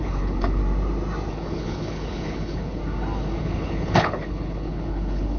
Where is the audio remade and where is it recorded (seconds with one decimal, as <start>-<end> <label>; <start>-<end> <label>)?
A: 0.0-0.6 remade; 0.6-1.3 recorded; 1.3-2.8 remade; 2.8-3.4 recorded; 3.4-5.4 remade